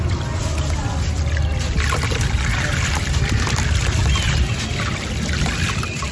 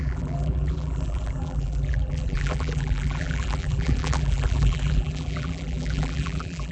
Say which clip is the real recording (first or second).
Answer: first